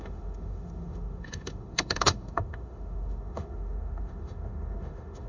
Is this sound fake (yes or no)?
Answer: yes